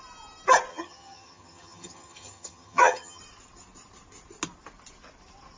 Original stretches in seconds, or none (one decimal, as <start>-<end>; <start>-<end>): 0.0-0.7; 3.2-5.6